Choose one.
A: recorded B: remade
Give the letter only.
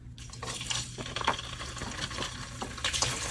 A